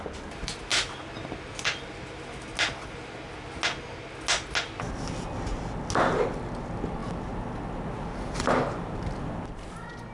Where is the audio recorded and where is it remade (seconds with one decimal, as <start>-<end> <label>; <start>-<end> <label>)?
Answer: 0.0-10.1 recorded